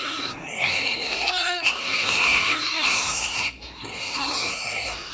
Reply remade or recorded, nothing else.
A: remade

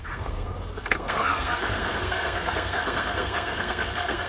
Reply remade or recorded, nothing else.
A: remade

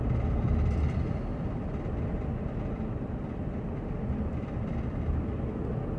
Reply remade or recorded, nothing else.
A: recorded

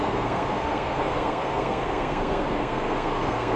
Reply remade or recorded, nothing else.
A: remade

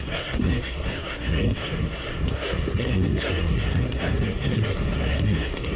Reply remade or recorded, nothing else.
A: remade